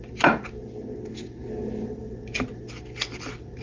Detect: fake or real real